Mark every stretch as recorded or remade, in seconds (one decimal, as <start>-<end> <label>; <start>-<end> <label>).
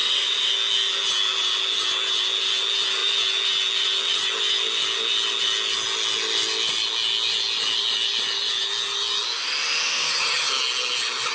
0.0-0.5 remade; 0.5-11.3 recorded